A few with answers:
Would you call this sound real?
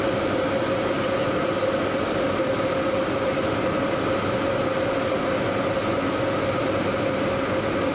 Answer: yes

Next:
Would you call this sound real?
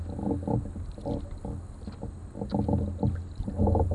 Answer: yes